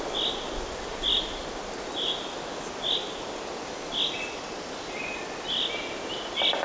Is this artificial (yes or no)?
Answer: no